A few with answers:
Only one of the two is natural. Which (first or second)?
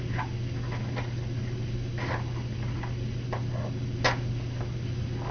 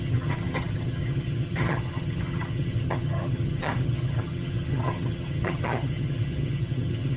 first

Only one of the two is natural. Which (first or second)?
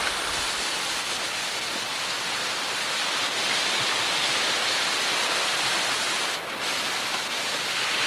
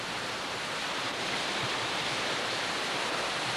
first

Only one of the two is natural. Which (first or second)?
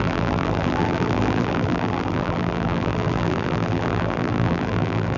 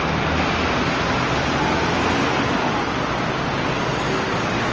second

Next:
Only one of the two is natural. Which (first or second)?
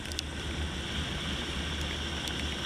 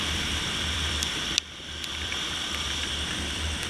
first